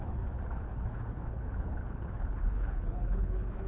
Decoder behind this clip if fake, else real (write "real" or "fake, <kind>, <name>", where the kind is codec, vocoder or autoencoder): fake, codec, HILCodec